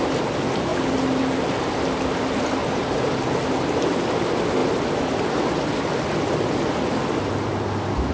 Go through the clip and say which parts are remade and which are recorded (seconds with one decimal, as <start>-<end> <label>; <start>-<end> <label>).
0.0-2.6 recorded; 2.6-3.4 remade; 3.4-8.1 recorded